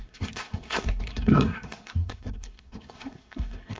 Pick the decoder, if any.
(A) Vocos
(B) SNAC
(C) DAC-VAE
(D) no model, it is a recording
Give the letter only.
B